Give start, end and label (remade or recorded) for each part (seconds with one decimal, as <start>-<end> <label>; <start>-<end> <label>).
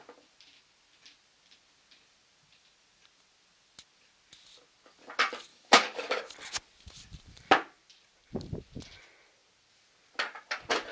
0.0-5.5 recorded; 5.5-6.2 remade; 6.2-10.9 recorded